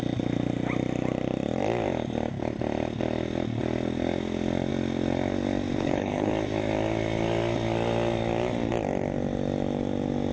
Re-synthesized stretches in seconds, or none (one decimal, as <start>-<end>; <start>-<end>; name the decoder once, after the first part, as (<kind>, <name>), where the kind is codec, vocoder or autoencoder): 5.8-6.3 (codec, HILCodec)